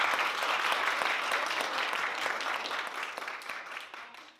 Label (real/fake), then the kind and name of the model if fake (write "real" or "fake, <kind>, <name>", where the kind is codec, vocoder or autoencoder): real